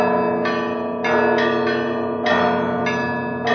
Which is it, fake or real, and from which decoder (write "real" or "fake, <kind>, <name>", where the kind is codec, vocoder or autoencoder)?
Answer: real